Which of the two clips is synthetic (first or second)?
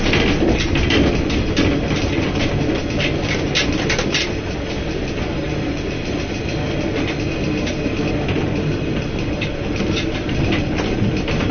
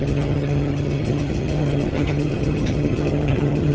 second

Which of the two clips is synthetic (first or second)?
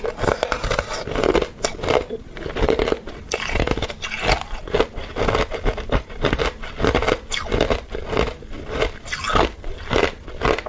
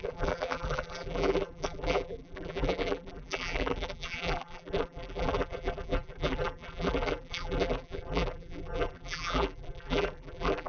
second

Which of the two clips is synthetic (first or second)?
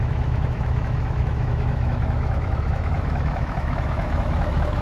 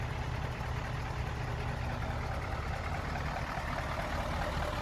first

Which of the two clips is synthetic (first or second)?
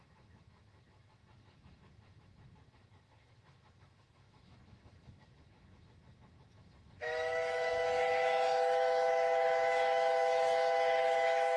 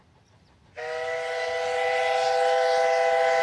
first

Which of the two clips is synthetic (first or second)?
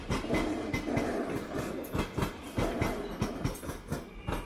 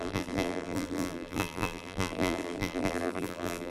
second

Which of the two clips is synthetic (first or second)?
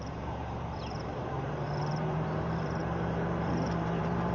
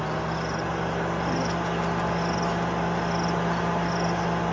first